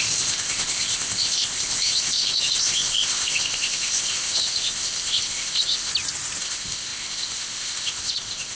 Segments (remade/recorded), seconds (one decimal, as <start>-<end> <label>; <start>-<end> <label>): 0.0-5.9 remade; 5.9-6.4 recorded; 6.4-8.5 remade